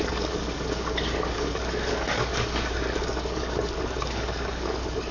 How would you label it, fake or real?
fake